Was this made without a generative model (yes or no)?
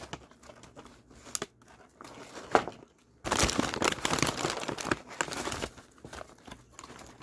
yes